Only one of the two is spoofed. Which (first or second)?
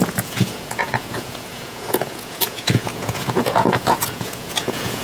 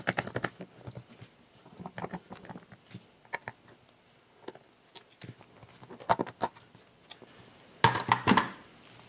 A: first